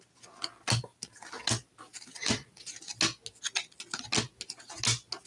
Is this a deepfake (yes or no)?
no